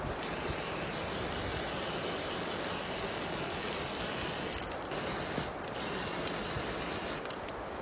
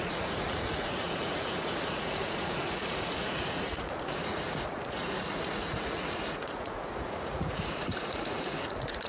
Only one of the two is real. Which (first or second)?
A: first